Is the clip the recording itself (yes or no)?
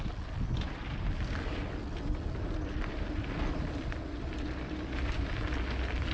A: yes